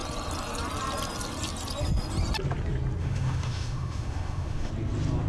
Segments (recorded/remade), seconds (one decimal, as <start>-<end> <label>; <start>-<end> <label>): 0.0-3.0 recorded; 3.0-4.7 remade; 4.7-5.3 recorded